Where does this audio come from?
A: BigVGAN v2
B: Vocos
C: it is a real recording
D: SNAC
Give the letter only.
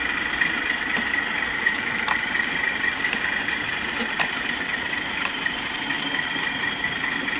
A